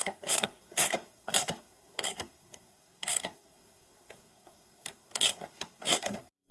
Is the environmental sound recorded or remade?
remade